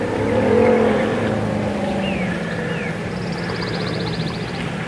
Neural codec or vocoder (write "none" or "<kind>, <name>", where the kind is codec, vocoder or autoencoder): none